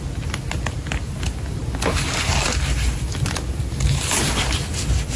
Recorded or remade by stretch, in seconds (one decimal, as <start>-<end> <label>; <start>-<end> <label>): 0.0-5.2 recorded